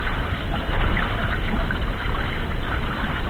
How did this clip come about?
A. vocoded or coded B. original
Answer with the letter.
A